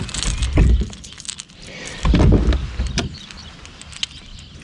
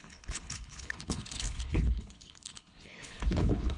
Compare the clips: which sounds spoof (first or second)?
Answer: second